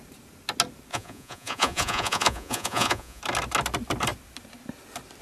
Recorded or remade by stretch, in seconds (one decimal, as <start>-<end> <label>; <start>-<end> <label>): 0.0-0.9 recorded; 0.9-3.2 remade; 3.2-5.2 recorded